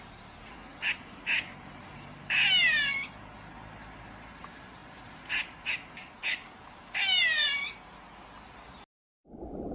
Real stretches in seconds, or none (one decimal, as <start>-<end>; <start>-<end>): 0.0-9.7